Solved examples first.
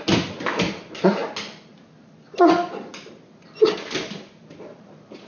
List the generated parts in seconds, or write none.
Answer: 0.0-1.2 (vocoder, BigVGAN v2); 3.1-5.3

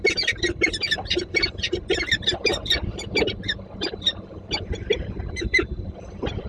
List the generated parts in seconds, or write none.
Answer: 0.0-6.5 (vocoder, BigVGAN v2)

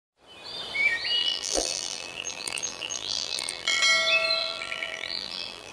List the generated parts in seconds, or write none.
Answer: 1.2-3.8 (vocoder, BigVGAN v2); 4.4-5.7